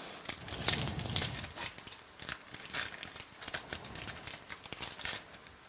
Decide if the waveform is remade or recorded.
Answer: recorded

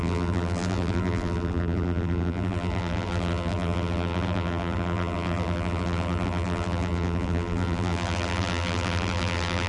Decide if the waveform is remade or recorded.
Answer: remade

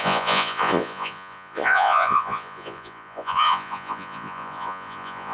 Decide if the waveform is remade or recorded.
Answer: remade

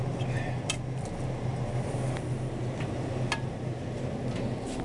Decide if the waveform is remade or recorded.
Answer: recorded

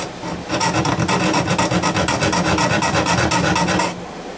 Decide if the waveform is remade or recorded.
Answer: recorded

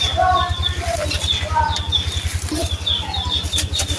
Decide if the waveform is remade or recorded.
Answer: recorded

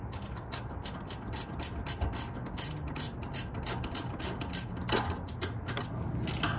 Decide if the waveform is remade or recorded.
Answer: recorded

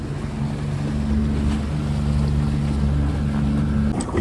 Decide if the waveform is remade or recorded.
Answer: recorded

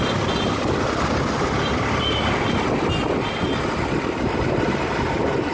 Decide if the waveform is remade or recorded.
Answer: recorded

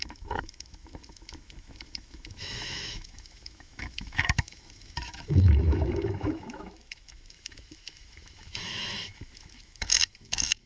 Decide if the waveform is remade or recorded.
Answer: remade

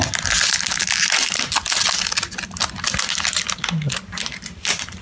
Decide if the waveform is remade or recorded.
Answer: recorded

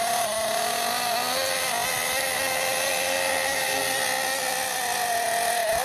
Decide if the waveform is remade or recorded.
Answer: recorded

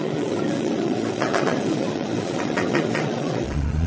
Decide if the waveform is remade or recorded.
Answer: remade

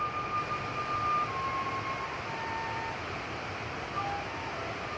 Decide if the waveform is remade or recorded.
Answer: recorded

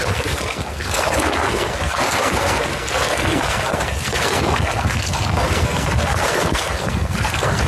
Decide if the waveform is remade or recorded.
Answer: remade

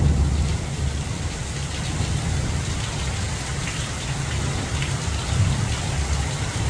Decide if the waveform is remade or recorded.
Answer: remade